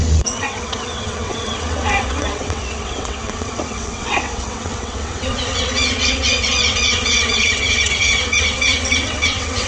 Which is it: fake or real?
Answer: fake